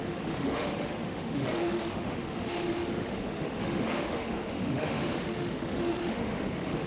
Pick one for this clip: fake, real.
fake